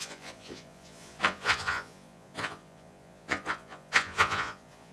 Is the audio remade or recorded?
remade